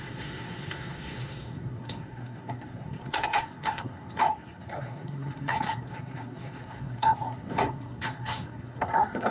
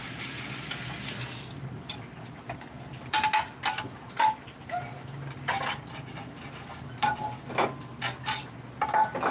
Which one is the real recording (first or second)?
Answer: second